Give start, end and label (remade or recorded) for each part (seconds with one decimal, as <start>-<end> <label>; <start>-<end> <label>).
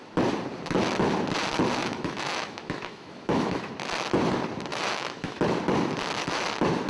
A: 0.0-1.8 recorded; 1.8-3.7 remade; 3.7-4.7 recorded; 4.7-5.4 remade; 5.4-6.9 recorded